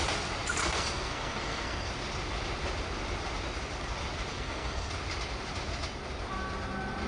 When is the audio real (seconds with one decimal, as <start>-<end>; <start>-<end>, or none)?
0.0-0.6; 1.9-4.3; 4.9-7.1